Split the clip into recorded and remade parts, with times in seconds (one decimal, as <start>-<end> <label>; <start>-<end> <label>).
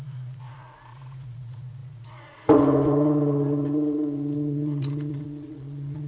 0.0-6.1 remade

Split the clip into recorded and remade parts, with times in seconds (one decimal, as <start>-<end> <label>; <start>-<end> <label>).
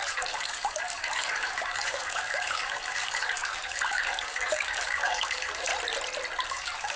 0.0-5.7 remade; 5.7-6.5 recorded; 6.5-7.0 remade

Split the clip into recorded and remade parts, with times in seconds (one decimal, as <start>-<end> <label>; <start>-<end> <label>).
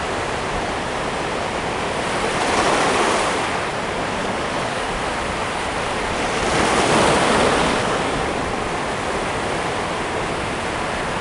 0.0-4.2 recorded; 4.2-4.9 remade; 4.9-7.8 recorded; 7.8-8.4 remade; 8.4-11.2 recorded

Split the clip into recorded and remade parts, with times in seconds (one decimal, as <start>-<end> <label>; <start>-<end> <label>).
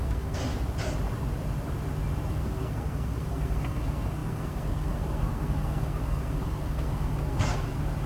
0.0-0.4 remade; 0.4-2.3 recorded; 2.3-8.1 remade